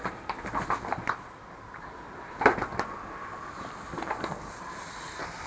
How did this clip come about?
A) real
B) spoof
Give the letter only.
A